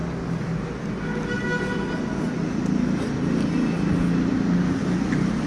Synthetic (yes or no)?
no